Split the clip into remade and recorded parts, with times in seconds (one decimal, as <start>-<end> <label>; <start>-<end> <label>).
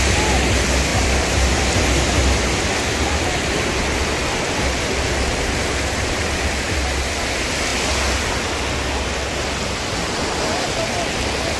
0.0-0.9 recorded; 0.9-5.3 remade; 5.3-11.6 recorded